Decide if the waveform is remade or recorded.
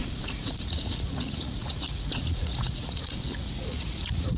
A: remade